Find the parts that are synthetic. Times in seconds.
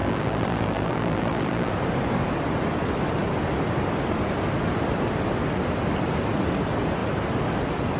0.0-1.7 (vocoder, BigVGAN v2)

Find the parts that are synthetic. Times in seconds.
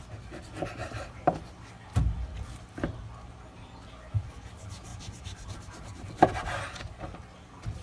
0.8-1.4 (vocoder, BigVGAN v2); 4.9-6.3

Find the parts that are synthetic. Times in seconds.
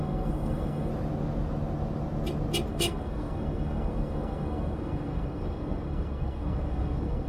0.0-0.9 (codec, SNAC); 2.7-7.3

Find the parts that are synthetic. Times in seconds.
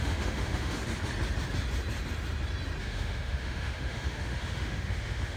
0.0-0.8 (autoencoder, DAC-VAE); 2.8-5.4